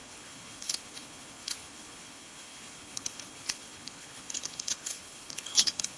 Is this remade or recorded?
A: remade